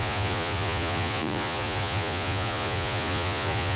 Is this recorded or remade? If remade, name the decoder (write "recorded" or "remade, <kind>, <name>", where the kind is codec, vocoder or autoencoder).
remade, vocoder, Vocos